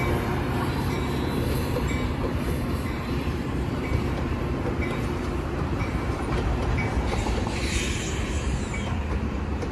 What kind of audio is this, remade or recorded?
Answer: remade